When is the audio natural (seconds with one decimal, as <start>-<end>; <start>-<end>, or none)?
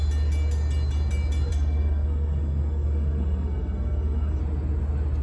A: 0.0-1.5; 4.4-5.2